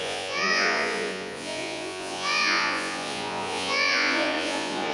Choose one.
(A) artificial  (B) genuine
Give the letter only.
A